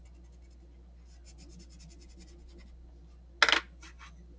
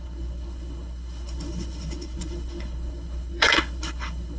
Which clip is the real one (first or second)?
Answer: first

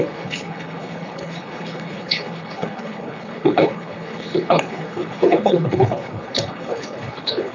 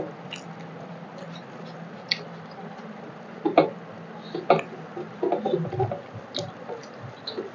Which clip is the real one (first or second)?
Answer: second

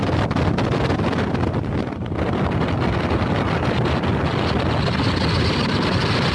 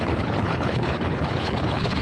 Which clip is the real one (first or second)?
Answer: first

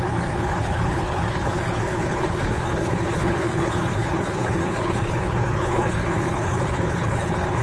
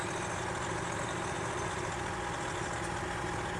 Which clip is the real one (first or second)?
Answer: second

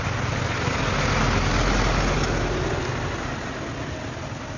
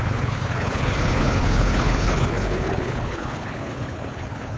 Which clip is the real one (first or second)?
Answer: first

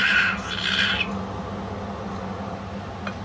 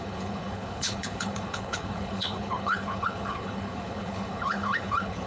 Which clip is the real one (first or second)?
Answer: first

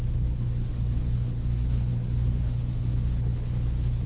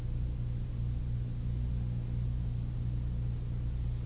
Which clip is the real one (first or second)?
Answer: second